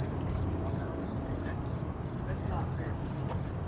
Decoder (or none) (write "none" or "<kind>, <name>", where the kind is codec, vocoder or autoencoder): codec, DAC